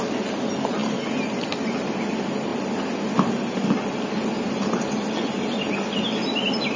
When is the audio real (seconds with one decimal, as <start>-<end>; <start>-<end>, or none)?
0.0-6.8